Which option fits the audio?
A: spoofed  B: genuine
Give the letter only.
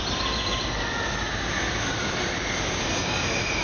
B